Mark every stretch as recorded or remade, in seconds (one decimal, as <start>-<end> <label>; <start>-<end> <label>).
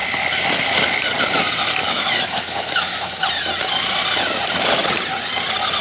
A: 0.0-1.8 recorded; 1.8-3.2 remade; 3.2-5.8 recorded